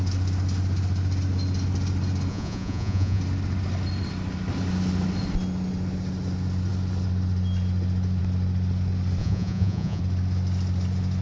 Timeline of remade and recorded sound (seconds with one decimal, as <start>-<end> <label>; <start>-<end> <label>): 0.0-2.3 recorded; 2.3-3.2 remade; 3.2-9.2 recorded; 9.2-10.0 remade; 10.0-11.2 recorded